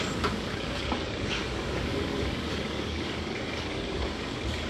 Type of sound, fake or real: fake